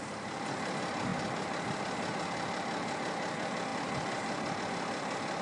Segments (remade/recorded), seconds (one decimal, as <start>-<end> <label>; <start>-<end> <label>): 0.0-1.1 recorded; 1.1-1.8 remade; 1.8-5.4 recorded